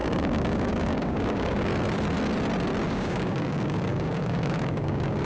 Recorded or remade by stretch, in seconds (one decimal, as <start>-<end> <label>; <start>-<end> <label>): 0.0-1.7 remade; 1.7-2.9 recorded; 2.9-5.2 remade